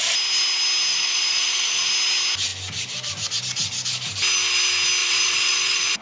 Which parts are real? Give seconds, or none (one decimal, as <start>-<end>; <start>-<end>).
0.0-0.9; 1.9-5.0